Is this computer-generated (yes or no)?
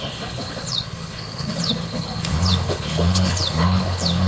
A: yes